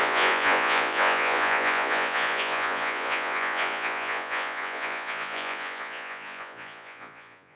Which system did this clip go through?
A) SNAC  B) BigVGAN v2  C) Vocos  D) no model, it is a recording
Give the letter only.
C